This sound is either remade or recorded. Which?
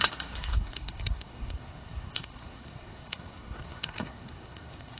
remade